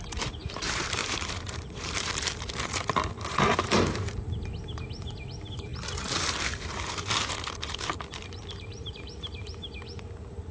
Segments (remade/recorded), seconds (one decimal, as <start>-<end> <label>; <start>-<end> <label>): 0.0-10.5 remade